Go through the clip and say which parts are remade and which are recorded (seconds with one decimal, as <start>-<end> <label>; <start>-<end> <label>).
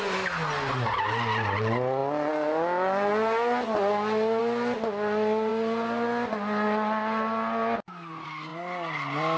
0.0-9.4 recorded